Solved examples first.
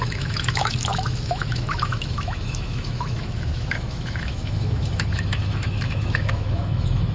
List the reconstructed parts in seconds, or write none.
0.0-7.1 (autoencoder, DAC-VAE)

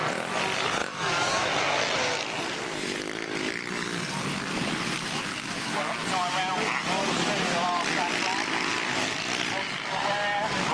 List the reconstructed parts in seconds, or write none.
0.8-1.5 (autoencoder, DAC-VAE); 5.3-5.9